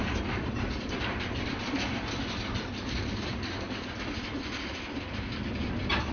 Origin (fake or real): real